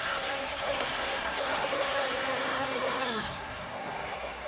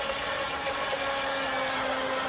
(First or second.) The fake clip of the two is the first